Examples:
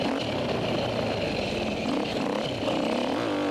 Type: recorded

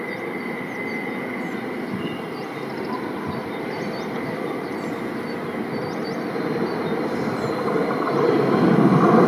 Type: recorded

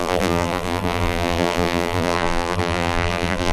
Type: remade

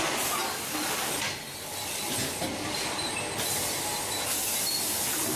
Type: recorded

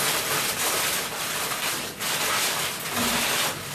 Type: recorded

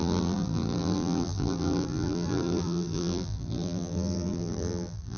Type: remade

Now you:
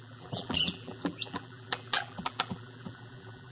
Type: remade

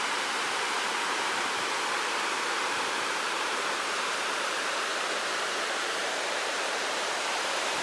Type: remade